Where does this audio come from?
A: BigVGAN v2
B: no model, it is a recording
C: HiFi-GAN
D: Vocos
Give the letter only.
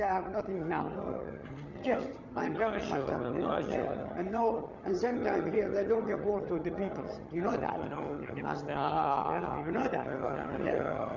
C